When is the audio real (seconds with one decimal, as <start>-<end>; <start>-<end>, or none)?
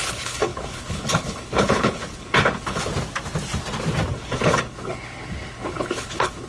2.9-4.1